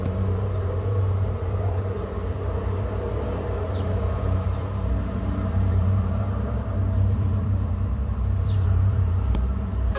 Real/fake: fake